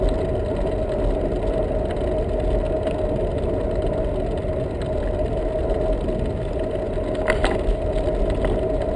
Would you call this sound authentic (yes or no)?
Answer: yes